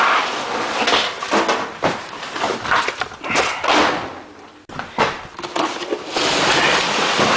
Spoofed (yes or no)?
no